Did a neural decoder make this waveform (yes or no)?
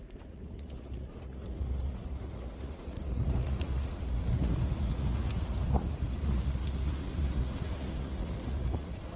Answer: yes